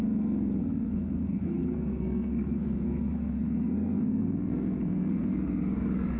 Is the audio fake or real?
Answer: fake